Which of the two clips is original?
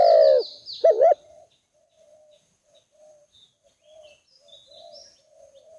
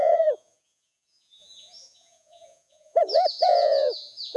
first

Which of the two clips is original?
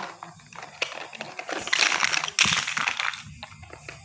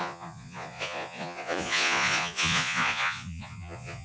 first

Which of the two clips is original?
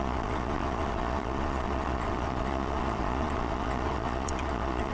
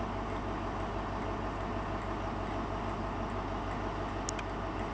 second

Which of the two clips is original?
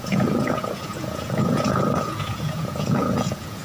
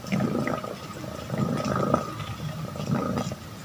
second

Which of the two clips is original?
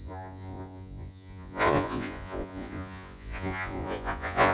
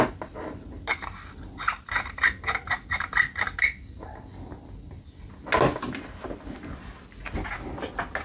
second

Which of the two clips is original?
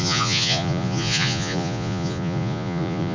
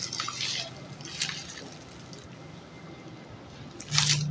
second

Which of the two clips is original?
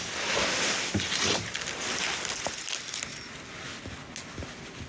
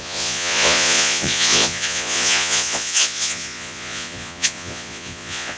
first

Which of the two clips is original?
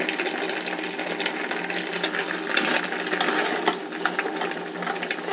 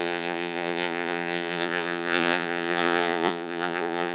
first